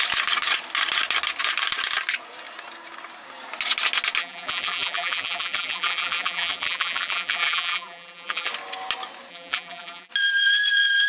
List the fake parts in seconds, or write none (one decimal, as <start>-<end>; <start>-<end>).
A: 4.2-8.5; 9.3-10.1